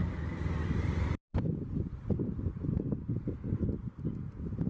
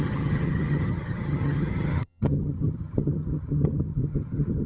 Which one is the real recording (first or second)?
first